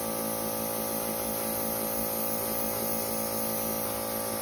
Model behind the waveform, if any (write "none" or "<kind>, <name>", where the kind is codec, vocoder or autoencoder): none